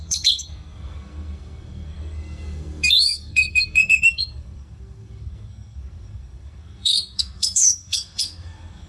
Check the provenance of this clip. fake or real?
fake